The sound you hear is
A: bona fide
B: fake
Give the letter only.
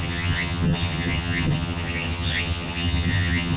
B